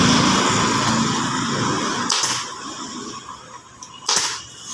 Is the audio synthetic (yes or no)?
no